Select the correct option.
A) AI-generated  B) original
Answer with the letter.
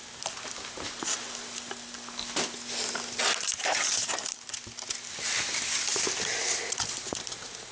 B